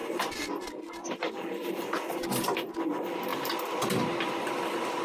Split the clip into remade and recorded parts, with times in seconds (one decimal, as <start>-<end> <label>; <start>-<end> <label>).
0.0-2.7 remade; 2.7-5.0 recorded